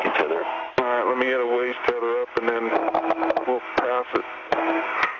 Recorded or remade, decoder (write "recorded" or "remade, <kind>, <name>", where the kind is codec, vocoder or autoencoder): recorded